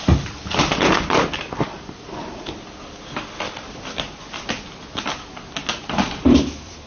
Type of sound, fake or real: real